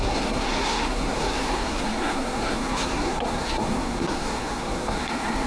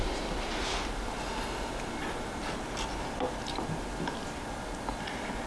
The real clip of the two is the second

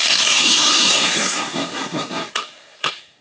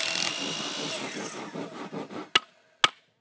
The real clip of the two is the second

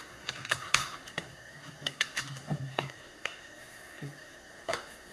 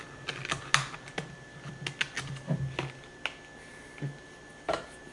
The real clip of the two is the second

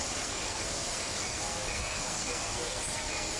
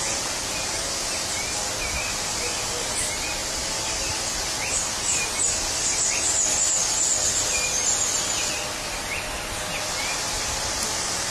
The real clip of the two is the second